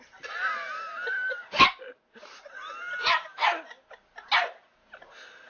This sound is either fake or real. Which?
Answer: real